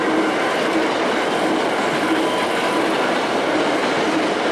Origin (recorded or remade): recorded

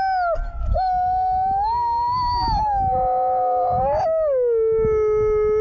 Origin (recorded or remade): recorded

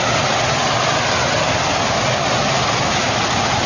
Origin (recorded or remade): recorded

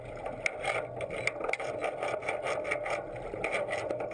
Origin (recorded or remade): recorded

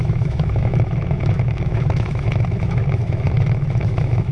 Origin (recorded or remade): remade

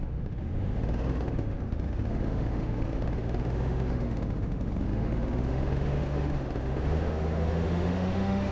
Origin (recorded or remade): remade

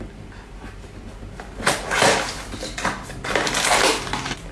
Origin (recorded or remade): recorded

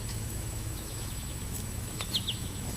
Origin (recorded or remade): remade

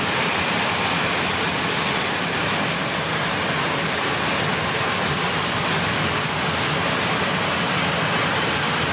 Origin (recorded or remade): recorded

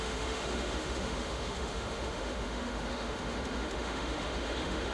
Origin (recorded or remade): remade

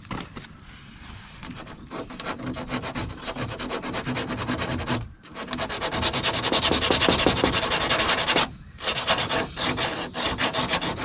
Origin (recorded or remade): recorded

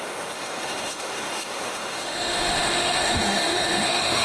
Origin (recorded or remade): remade